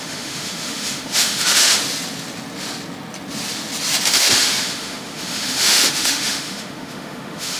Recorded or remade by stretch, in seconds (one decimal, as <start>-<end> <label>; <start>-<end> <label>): 0.0-1.8 remade; 1.8-4.1 recorded; 4.1-7.6 remade